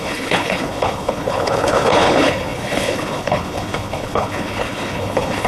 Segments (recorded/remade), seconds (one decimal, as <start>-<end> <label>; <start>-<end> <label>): 0.0-5.5 remade